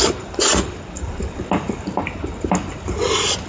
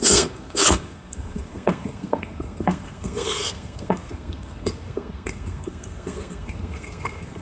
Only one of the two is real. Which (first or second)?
first